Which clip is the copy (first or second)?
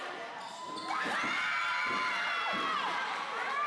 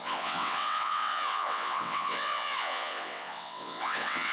second